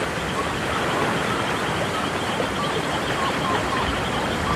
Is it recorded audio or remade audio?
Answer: recorded